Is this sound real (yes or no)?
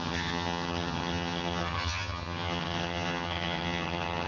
no